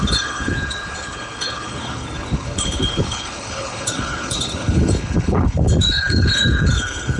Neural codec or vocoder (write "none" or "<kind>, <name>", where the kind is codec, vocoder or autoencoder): codec, HILCodec